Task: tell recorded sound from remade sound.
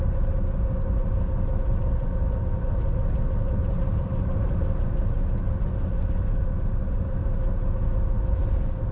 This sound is recorded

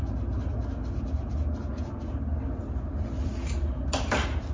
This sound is recorded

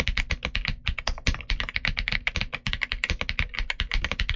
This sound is recorded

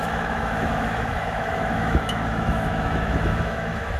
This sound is remade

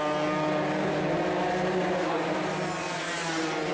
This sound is recorded